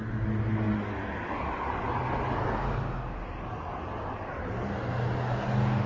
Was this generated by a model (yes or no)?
no